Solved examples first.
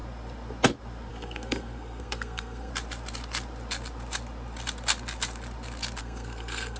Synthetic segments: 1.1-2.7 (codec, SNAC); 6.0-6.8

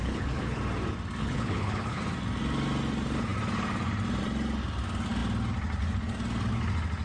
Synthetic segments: 0.0-0.6 (codec, HILCodec); 1.2-2.0

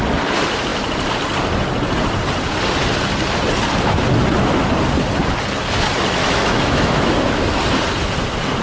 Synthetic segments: 6.2-7.6 (autoencoder, DAC-VAE)

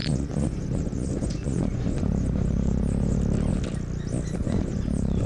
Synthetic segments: 0.0-3.2 (vocoder, Vocos); 4.4-5.3

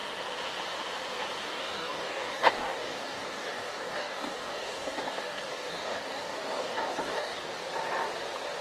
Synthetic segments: 1.4-7.6 (codec, DAC)

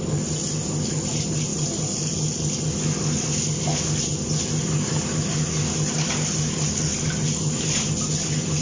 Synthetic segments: none

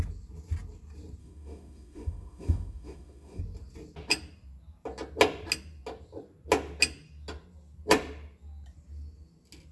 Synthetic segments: 1.2-3.4 (autoencoder, DAC-VAE)

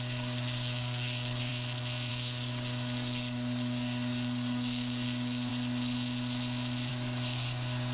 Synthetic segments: 0.0-1.5 (codec, DAC); 2.1-5.5; 6.9-7.9